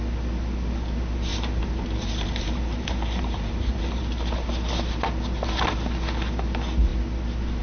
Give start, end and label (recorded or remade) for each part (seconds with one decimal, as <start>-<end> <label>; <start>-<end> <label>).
0.0-1.3 recorded; 1.3-4.0 remade; 4.0-7.6 recorded